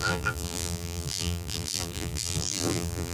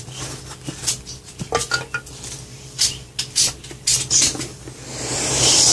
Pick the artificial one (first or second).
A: first